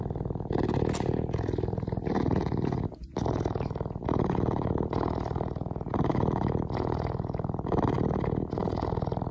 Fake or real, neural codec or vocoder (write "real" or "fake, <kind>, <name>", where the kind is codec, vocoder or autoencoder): real